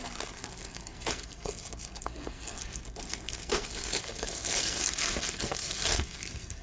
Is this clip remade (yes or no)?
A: yes